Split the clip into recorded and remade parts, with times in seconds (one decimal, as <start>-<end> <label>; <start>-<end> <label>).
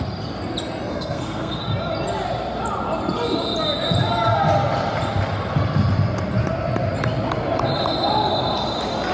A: 0.0-0.9 recorded; 0.9-1.6 remade; 1.6-9.1 recorded